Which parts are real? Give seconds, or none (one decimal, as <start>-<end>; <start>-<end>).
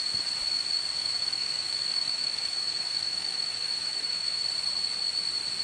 0.0-1.0; 4.4-5.6